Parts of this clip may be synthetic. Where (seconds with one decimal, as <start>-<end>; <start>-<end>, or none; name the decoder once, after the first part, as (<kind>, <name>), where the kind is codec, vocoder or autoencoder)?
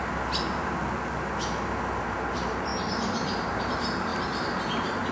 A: 2.0-4.1 (vocoder, BigVGAN v2)